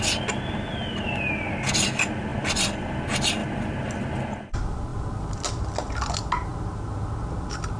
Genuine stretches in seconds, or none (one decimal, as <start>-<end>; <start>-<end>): 0.0-2.3; 2.9-7.8